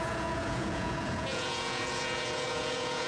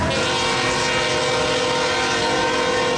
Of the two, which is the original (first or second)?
second